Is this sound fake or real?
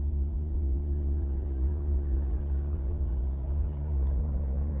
fake